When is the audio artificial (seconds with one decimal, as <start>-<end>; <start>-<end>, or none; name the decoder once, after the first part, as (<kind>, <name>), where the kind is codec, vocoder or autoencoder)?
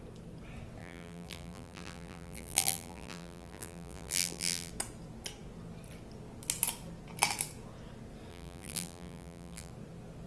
0.8-4.7 (vocoder, BigVGAN v2); 8.3-9.7